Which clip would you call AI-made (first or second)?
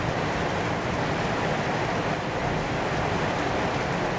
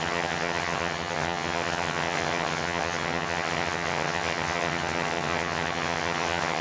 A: second